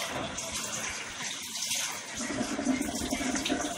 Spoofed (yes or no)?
yes